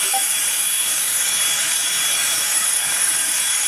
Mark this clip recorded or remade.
remade